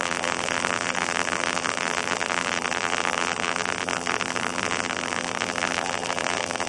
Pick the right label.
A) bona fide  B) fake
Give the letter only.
B